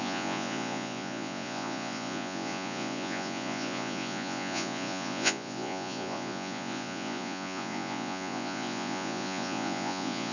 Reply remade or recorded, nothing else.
remade